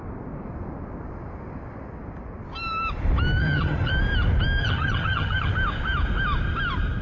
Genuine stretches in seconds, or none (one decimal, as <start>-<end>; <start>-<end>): 0.0-3.4; 3.9-4.6; 5.5-7.0